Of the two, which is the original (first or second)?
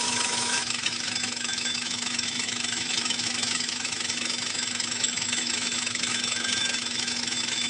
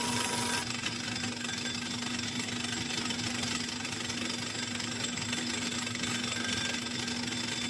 second